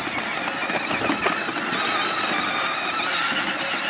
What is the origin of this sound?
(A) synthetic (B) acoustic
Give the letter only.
B